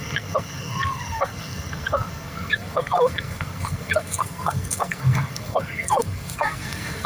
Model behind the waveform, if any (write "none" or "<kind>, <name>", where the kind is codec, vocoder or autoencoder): codec, SNAC